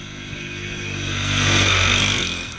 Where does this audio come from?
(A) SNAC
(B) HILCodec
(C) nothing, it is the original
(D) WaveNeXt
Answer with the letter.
A